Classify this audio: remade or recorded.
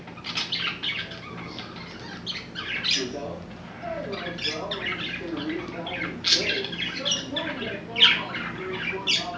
recorded